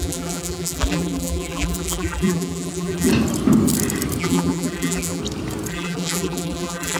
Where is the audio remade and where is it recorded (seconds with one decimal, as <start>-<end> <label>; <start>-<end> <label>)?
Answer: 0.0-3.1 remade; 3.1-4.2 recorded; 4.2-5.2 remade; 5.2-5.7 recorded; 5.7-7.0 remade